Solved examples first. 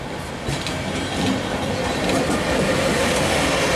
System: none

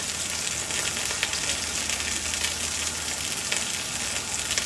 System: none